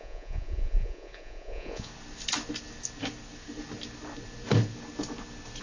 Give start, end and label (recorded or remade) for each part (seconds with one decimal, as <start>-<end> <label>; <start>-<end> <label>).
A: 0.0-1.9 remade; 1.9-5.6 recorded